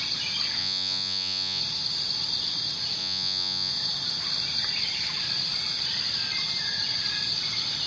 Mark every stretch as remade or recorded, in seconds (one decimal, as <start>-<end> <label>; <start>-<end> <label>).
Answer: 0.0-0.6 recorded; 0.6-1.6 remade; 1.6-3.0 recorded; 3.0-3.7 remade; 3.7-7.9 recorded